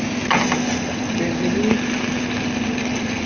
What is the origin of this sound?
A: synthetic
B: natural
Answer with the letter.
B